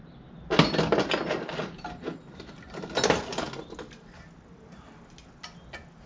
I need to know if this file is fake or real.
real